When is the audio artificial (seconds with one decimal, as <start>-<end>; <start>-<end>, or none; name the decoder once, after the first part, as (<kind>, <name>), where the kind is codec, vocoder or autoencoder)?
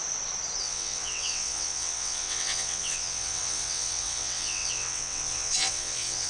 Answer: 0.6-6.3 (vocoder, WaveNeXt)